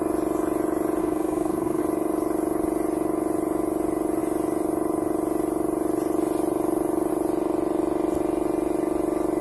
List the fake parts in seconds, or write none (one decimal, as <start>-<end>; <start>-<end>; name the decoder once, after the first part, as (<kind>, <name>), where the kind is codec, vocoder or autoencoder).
1.0-1.8 (codec, SNAC)